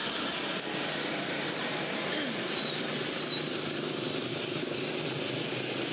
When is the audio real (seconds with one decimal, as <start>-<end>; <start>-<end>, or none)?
0.0-5.9

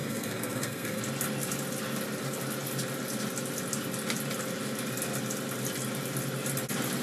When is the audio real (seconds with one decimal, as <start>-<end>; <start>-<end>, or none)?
1.0-7.0

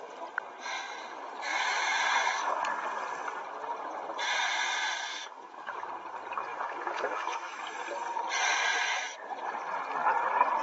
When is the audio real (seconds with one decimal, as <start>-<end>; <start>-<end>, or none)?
0.0-1.5; 2.0-5.1; 5.9-6.5; 7.6-10.6

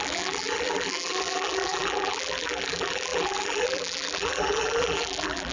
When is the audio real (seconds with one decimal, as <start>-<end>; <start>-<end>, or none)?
none

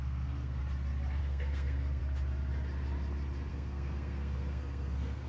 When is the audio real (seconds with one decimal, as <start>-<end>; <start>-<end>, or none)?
0.6-1.2; 2.0-3.5

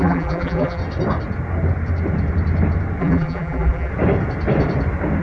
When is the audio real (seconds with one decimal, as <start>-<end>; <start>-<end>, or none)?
0.8-3.0; 3.9-5.2

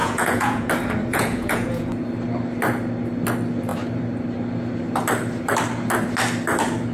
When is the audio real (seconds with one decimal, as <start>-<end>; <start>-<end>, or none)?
0.7-1.1; 1.9-6.9